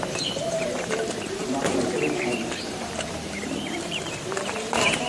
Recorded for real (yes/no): no